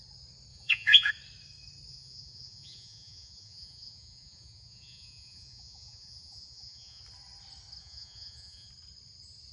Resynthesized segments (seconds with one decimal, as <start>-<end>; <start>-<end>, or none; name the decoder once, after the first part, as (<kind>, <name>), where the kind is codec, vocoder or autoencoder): 0.5-1.1 (vocoder, Vocos); 1.9-7.0; 7.8-8.7